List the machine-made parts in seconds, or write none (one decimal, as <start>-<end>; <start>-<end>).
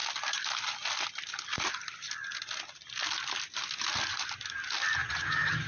5.0-5.7